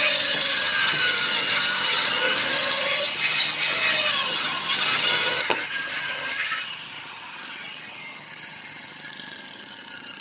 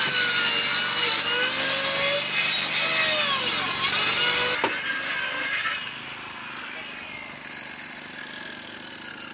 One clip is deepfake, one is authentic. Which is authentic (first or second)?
second